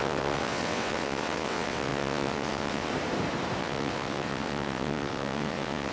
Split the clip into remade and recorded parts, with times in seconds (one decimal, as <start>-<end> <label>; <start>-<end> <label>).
0.0-2.9 remade; 2.9-3.6 recorded; 3.6-5.9 remade